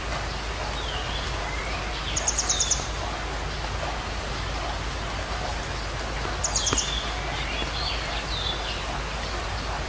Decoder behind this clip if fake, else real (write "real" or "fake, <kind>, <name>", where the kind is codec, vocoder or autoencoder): real